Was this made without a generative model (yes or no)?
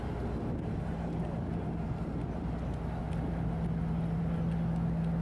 yes